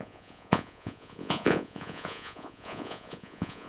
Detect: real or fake fake